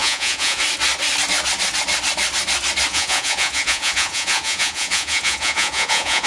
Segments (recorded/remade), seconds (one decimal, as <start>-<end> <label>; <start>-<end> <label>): 0.0-0.6 remade; 0.6-2.9 recorded; 2.9-6.3 remade